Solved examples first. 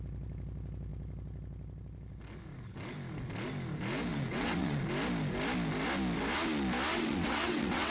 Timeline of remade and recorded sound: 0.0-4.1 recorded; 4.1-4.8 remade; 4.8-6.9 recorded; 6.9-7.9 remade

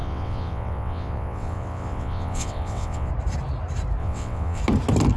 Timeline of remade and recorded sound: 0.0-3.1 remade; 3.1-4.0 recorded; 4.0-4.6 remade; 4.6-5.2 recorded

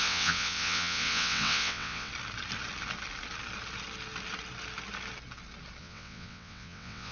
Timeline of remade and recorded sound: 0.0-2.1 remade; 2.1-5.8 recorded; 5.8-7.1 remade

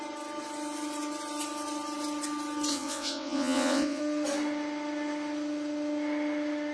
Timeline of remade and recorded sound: 0.0-2.7 recorded; 2.7-4.0 remade; 4.0-6.7 recorded

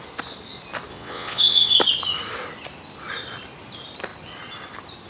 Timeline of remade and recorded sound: 0.0-0.9 recorded; 0.9-1.8 remade; 1.8-5.1 recorded

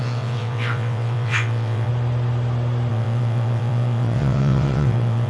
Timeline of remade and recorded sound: 0.0-1.9 remade; 1.9-2.9 recorded; 2.9-5.3 remade

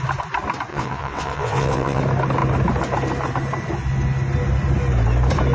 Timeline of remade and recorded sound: 0.0-0.7 recorded; 0.7-2.0 remade; 2.0-5.5 recorded